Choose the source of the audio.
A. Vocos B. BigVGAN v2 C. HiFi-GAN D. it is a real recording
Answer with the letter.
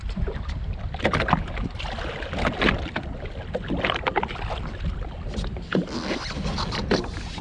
D